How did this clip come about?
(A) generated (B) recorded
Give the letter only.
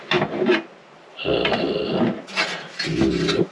B